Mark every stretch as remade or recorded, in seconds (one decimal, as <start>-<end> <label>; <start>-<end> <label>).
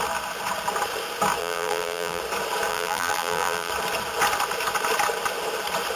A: 0.0-1.4 recorded; 1.4-2.2 remade; 2.2-2.7 recorded; 2.7-3.7 remade; 3.7-6.0 recorded